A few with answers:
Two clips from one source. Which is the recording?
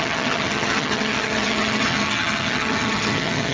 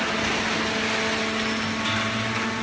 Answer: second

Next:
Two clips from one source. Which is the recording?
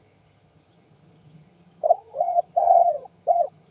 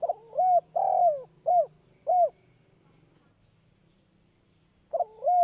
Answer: second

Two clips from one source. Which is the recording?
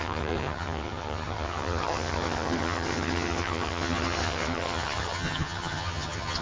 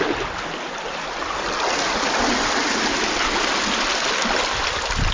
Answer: second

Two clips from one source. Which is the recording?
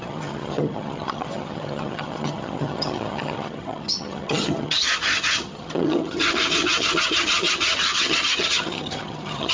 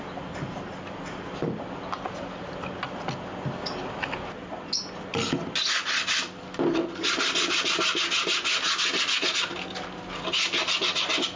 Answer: second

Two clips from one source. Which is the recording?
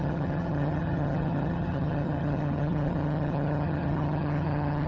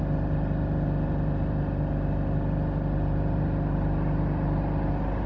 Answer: second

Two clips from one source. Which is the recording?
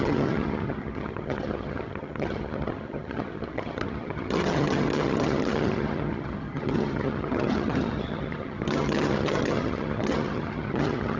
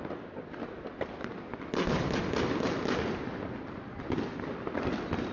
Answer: second